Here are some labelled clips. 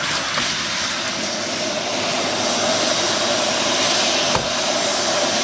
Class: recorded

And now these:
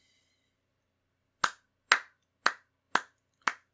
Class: recorded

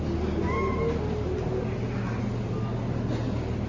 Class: recorded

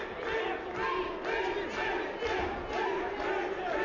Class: recorded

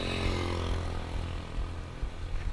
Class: recorded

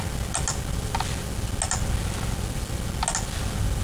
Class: recorded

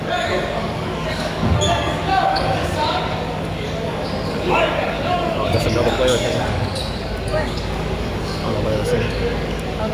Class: remade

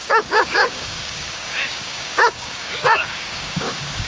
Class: remade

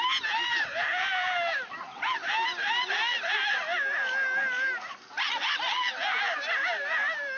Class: recorded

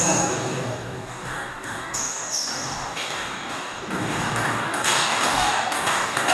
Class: remade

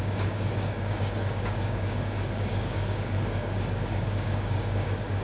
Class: remade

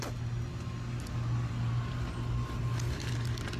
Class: recorded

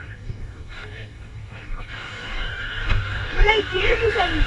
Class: remade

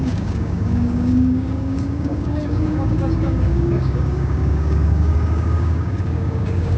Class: remade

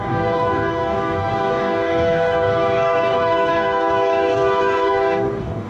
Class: remade